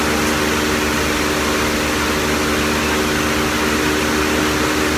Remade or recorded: recorded